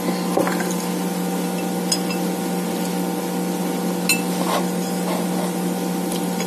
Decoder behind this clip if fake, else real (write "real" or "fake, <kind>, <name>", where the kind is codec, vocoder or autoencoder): real